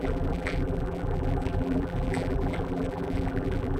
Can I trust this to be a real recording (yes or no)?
no